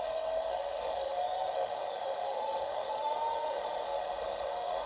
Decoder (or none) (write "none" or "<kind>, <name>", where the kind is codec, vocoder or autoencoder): autoencoder, DAC-VAE